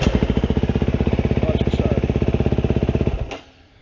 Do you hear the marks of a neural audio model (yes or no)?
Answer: no